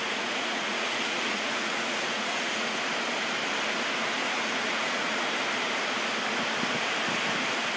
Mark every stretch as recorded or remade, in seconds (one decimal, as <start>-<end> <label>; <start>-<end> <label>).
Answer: 0.0-2.8 remade; 2.8-4.2 recorded; 4.2-5.3 remade; 5.3-7.8 recorded